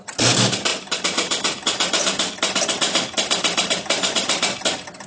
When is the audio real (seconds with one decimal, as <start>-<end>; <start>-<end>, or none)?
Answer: 0.0-5.1